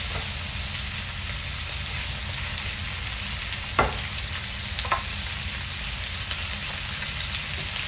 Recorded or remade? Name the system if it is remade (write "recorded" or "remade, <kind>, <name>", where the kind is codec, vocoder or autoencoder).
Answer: recorded